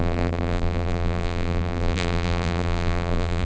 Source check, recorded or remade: remade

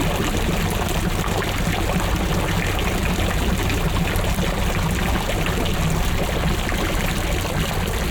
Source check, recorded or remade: recorded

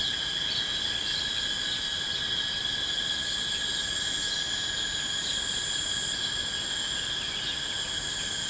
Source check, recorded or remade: recorded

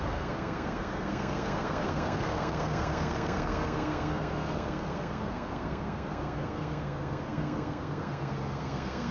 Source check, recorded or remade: remade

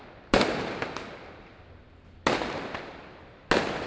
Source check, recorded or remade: recorded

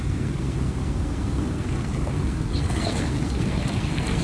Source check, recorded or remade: remade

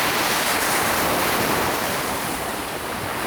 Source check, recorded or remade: remade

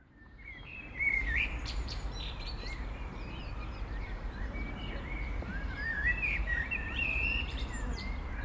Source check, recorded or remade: remade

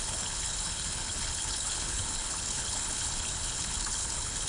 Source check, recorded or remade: remade